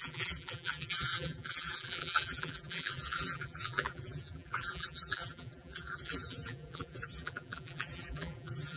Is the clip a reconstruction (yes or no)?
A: yes